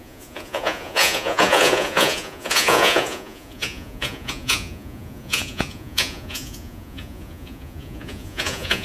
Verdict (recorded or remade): remade